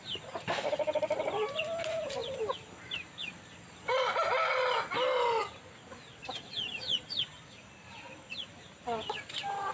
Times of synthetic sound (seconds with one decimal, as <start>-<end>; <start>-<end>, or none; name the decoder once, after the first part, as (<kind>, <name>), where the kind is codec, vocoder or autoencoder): none